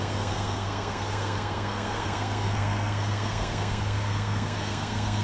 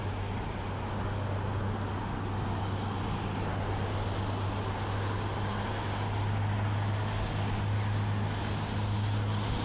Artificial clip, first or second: first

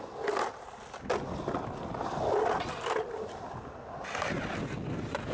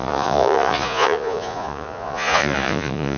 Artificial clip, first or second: second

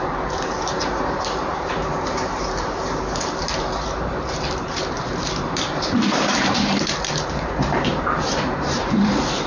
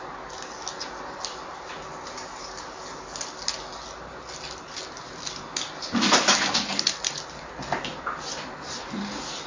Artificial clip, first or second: first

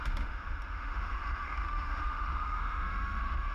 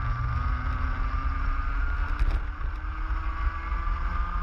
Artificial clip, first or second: first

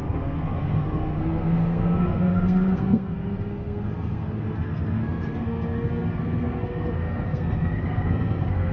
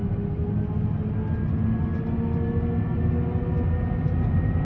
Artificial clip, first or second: first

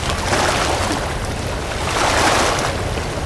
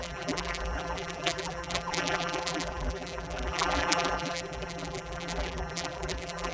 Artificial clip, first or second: second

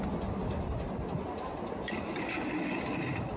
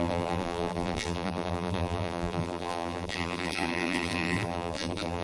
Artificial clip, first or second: second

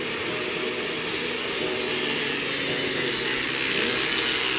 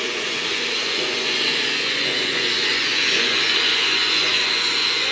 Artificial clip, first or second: second